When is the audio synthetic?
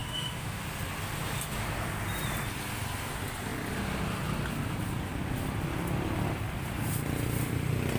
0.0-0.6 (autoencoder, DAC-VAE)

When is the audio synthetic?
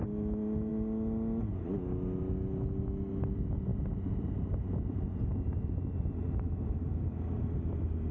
none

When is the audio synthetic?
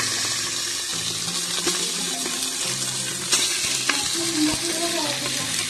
none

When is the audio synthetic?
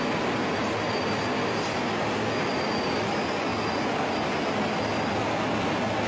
none